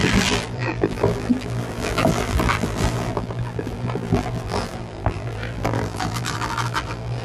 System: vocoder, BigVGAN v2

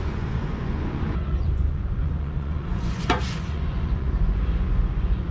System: vocoder, Vocos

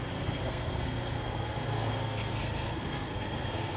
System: codec, SNAC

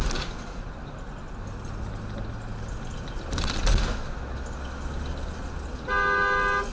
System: none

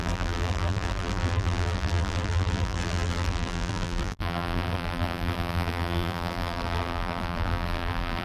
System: vocoder, BigVGAN v2